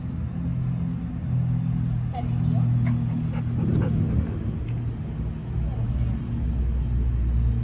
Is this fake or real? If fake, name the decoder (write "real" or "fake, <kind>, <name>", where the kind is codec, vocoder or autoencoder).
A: real